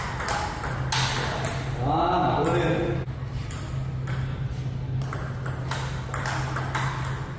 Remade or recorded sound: recorded